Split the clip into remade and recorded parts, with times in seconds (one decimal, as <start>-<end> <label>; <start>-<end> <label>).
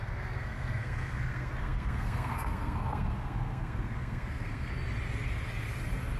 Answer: 0.0-4.7 remade; 4.7-6.2 recorded